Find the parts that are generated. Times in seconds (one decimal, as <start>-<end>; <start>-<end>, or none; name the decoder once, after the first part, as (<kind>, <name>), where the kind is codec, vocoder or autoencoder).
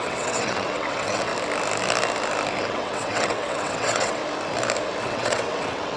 0.0-1.3 (vocoder, WaveNeXt); 2.6-4.2; 5.0-6.0